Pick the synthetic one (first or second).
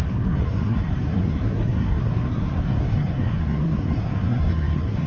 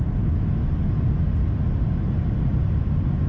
first